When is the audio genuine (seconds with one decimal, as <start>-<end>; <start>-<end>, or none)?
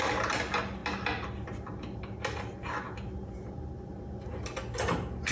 0.0-5.3